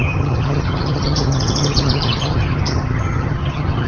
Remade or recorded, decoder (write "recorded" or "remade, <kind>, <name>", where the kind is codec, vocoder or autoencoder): remade, vocoder, HiFi-GAN